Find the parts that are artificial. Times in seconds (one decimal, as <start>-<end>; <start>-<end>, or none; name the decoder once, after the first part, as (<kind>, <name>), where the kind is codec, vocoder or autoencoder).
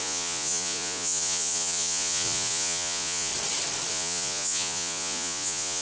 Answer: 0.0-3.3 (vocoder, Vocos); 3.9-5.8